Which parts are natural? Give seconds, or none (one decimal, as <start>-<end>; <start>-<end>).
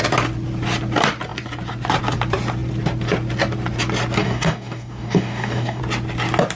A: 0.0-4.2; 5.8-6.5